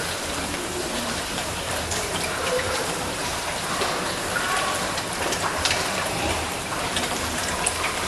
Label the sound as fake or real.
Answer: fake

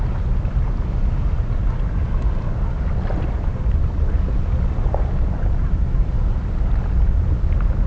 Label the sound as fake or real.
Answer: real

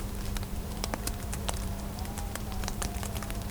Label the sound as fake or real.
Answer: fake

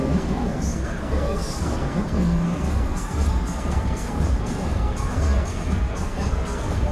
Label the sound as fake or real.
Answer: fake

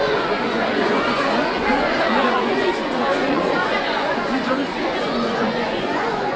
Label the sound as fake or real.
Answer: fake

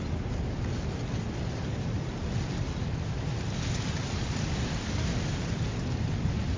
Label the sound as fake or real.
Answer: real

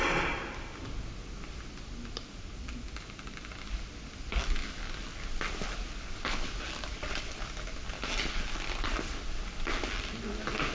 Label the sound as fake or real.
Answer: real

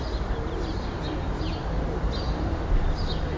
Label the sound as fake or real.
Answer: real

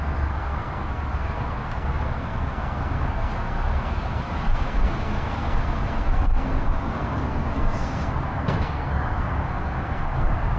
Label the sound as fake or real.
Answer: fake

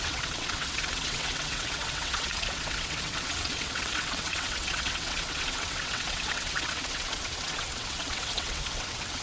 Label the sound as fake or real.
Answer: fake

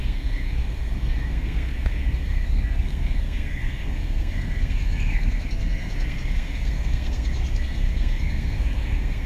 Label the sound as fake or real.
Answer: fake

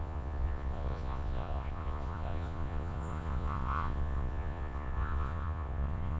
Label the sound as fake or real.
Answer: fake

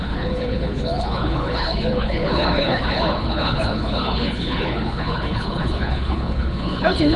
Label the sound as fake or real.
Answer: fake